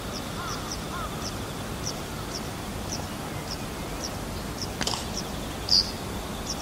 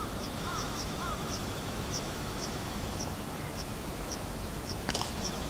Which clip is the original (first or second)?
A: first